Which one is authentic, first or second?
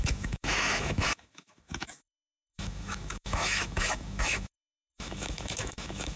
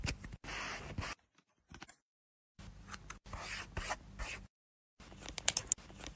second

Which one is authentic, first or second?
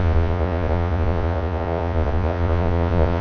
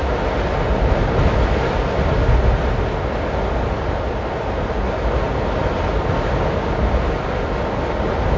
second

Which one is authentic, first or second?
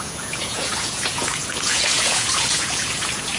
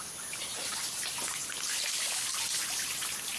second